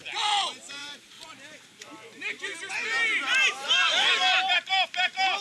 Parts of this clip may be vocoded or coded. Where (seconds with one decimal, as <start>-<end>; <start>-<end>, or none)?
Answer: 0.8-2.7; 3.3-4.1